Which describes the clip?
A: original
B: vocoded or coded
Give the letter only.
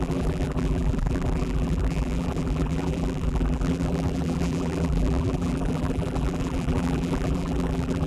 B